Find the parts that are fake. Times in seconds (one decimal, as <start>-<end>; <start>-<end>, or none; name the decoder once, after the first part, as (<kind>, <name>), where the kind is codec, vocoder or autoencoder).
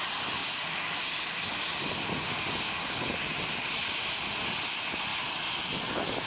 0.4-2.4 (vocoder, BigVGAN v2)